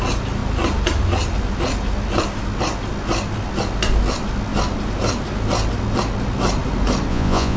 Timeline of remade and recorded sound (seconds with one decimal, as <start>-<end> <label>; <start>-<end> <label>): 0.0-7.1 recorded; 7.1-7.6 remade